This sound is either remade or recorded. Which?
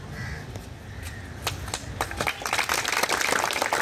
recorded